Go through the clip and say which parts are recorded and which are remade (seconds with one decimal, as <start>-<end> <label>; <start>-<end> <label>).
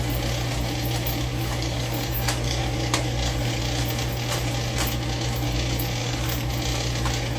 0.0-1.3 recorded; 1.3-3.6 remade; 3.6-6.0 recorded; 6.0-6.5 remade; 6.5-7.4 recorded